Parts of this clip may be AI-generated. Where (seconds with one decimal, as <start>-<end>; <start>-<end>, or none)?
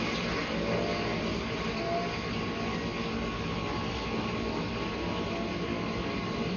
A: none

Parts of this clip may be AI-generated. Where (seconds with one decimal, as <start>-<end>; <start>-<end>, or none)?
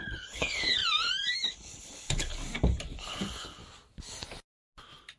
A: 0.0-0.8; 1.5-2.4; 3.0-3.6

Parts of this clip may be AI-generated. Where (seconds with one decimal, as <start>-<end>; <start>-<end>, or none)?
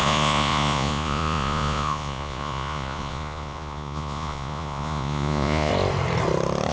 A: 0.0-5.7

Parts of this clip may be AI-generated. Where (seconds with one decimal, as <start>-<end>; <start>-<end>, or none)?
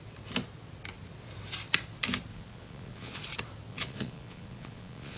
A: 2.3-3.2; 3.7-5.2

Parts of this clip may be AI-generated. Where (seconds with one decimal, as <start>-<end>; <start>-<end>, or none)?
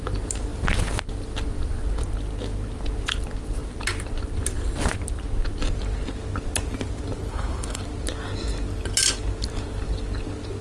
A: 7.3-7.8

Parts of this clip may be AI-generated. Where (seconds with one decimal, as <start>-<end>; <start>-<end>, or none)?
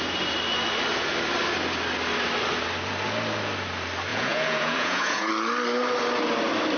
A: 4.1-5.3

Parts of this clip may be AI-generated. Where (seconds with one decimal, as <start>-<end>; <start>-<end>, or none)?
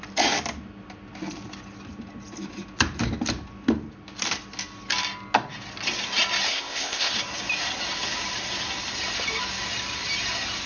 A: 6.5-7.1